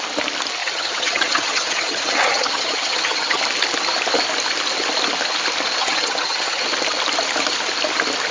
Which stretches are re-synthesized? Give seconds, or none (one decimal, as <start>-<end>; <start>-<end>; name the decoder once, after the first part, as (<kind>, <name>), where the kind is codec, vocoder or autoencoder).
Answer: 0.6-3.4 (vocoder, HiFi-GAN); 5.8-6.6